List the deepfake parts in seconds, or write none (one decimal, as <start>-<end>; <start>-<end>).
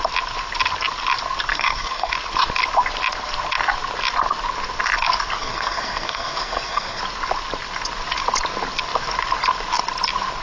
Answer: 1.5-2.1; 5.4-7.0